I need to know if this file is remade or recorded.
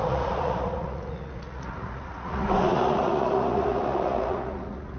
remade